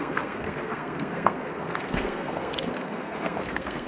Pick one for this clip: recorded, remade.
remade